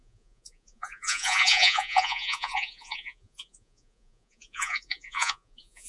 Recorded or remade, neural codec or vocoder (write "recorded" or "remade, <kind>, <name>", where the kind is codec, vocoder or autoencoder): remade, vocoder, Vocos